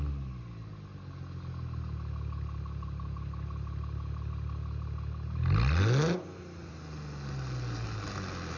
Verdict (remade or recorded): recorded